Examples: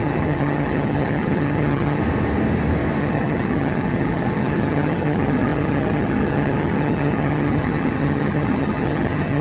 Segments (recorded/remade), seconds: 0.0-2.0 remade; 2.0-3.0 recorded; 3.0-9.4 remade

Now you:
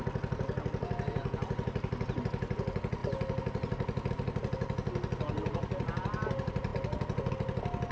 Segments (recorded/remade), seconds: 0.0-7.9 recorded

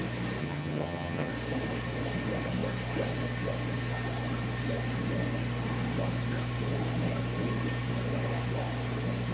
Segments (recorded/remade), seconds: 0.0-0.4 recorded; 0.4-1.3 remade; 1.3-9.3 recorded

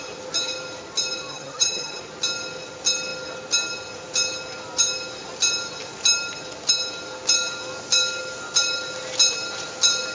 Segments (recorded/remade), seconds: 0.0-1.3 recorded; 1.3-2.0 remade; 2.0-10.1 recorded

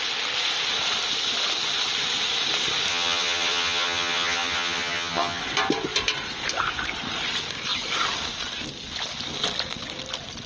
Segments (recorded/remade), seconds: 0.0-2.9 recorded; 2.9-5.4 remade; 5.4-10.5 recorded

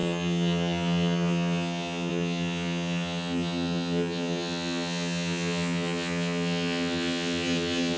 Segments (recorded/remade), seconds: 0.0-8.0 remade

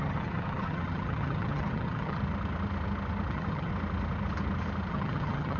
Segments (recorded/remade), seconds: 0.0-2.2 remade; 2.2-3.3 recorded; 3.3-3.7 remade; 3.7-4.9 recorded; 4.9-5.6 remade

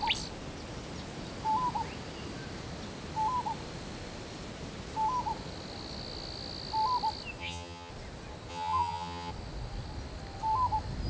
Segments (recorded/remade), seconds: 0.0-7.4 recorded; 7.4-7.9 remade; 7.9-8.5 recorded; 8.5-9.3 remade; 9.3-11.1 recorded